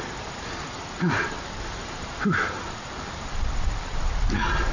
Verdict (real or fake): fake